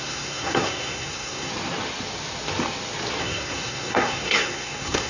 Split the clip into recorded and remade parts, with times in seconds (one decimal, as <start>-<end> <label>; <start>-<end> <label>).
0.0-1.5 remade; 1.5-3.2 recorded; 3.2-5.1 remade